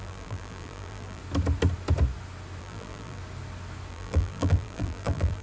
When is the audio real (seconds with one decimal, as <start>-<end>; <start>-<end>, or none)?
1.2-2.6; 3.2-3.9